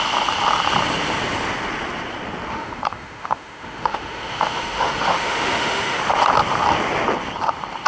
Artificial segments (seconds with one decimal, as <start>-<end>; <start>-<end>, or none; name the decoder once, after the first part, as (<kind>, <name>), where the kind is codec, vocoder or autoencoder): 2.5-6.0 (autoencoder, DAC-VAE)